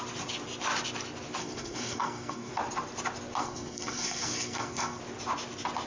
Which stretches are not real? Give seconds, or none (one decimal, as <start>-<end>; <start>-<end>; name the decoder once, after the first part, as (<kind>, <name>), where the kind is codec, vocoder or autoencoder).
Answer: 1.4-2.5 (codec, SNAC); 3.4-5.0